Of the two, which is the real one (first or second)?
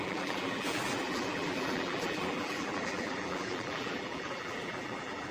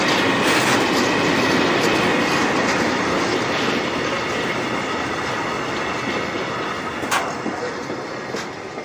second